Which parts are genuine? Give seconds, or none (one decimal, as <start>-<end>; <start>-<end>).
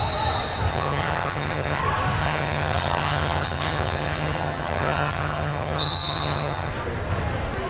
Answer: 0.0-0.7; 1.8-2.2; 6.7-7.7